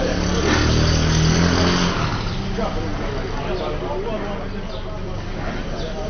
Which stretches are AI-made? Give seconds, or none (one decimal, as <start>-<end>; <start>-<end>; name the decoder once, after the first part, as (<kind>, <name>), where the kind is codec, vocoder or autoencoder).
none